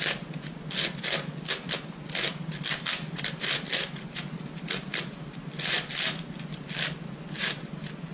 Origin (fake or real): real